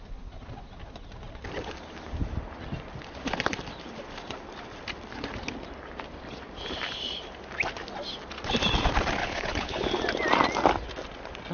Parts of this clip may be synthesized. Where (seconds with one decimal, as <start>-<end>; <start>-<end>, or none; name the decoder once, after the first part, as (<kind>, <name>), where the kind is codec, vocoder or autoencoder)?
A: 9.2-9.9 (codec, HILCodec)